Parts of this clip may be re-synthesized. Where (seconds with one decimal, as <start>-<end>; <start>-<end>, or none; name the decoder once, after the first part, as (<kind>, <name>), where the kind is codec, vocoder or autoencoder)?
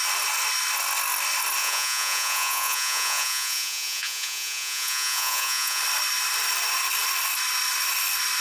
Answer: 1.6-5.8 (vocoder, Vocos)